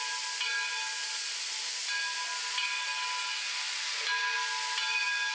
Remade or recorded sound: recorded